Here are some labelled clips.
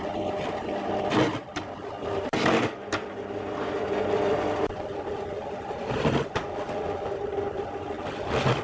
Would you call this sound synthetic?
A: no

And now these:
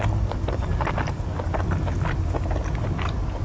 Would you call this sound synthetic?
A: no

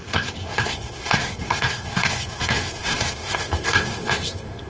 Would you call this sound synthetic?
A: yes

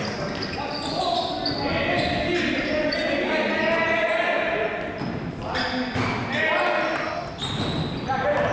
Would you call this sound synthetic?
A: no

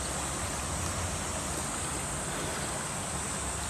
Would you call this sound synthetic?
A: no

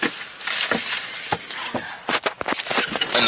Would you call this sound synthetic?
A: no